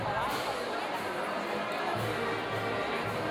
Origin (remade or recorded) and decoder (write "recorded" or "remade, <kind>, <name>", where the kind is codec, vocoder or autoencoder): recorded